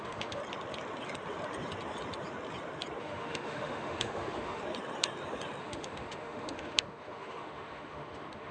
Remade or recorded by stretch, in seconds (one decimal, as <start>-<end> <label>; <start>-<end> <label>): 0.0-0.4 remade; 0.4-3.0 recorded; 3.0-4.6 remade; 4.6-5.6 recorded; 5.6-8.5 remade